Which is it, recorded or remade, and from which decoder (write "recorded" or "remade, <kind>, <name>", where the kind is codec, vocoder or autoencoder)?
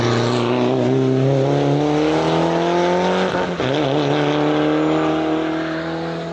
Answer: recorded